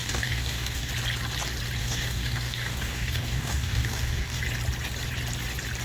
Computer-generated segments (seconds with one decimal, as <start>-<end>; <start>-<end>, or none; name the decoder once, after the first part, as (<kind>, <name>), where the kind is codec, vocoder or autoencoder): 0.0-0.9 (codec, DAC); 1.8-4.4